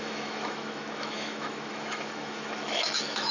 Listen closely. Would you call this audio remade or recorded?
remade